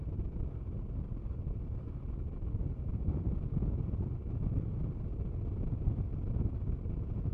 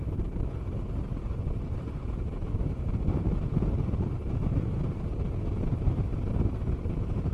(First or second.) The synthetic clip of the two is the second